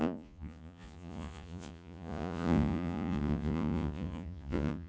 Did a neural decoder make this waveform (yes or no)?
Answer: yes